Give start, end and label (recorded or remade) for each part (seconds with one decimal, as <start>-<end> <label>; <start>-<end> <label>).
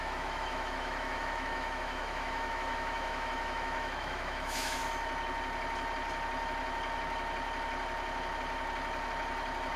0.0-4.8 remade; 4.8-9.8 recorded